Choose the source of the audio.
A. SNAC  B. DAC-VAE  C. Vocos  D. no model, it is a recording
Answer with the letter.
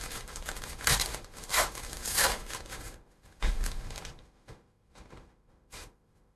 B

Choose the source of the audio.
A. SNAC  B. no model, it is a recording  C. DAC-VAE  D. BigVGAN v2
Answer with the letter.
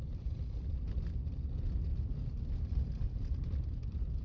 B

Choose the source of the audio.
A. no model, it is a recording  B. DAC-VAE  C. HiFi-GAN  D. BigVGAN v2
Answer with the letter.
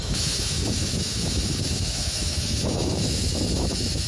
B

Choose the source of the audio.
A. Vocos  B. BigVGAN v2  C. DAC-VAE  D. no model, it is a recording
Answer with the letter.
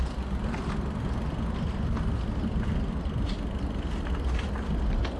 D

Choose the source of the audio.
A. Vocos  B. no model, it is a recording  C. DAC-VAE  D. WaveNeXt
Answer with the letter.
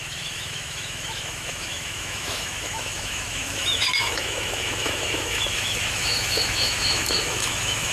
C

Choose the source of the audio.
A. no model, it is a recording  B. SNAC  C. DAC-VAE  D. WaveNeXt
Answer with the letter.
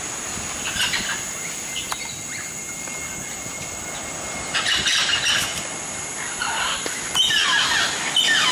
A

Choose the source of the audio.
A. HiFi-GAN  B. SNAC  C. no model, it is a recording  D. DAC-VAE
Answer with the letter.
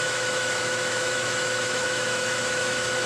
D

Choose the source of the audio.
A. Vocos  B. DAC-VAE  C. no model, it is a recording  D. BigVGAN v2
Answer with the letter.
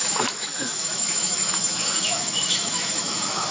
B